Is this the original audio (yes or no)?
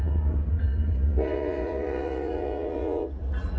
no